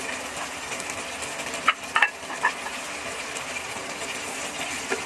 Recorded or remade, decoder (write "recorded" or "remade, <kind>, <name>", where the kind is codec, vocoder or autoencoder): recorded